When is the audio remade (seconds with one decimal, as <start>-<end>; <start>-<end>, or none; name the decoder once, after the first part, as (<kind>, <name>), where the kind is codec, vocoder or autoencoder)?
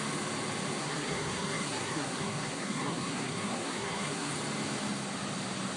0.8-4.3 (codec, SNAC)